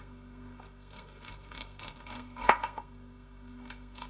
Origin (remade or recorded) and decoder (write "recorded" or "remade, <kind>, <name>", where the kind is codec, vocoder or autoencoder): remade, codec, SNAC